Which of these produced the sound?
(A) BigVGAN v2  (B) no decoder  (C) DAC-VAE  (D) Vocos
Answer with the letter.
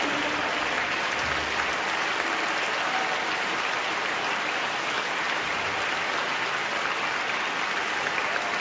B